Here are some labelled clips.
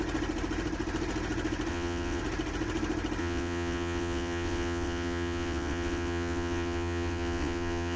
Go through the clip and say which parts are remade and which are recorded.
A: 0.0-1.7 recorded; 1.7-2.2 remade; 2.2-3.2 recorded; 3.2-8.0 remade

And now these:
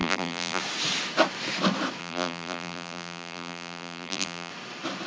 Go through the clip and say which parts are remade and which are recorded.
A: 0.0-0.6 remade; 0.6-2.0 recorded; 2.0-4.5 remade; 4.5-5.1 recorded

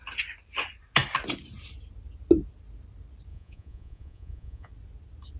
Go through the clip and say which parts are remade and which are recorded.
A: 0.0-3.3 recorded; 3.3-4.7 remade; 4.7-5.4 recorded

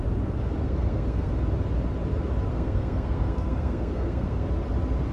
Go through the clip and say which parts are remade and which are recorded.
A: 0.0-0.6 recorded; 0.6-1.3 remade; 1.3-2.5 recorded; 2.5-4.5 remade; 4.5-5.1 recorded

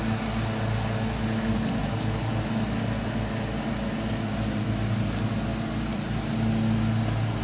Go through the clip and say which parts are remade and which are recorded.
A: 0.0-7.4 recorded

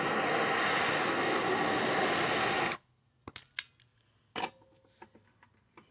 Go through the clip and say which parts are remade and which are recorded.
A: 0.0-5.9 recorded

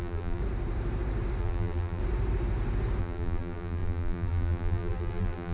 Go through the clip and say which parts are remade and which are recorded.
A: 0.0-0.4 remade; 0.4-1.4 recorded; 1.4-2.0 remade; 2.0-3.0 recorded; 3.0-5.5 remade